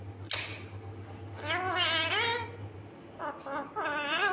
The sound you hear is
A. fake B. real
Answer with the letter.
B